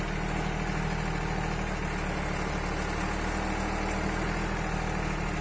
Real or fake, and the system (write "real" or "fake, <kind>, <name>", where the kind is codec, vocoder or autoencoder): real